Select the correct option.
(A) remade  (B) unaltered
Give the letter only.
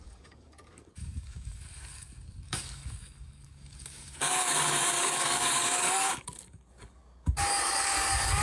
A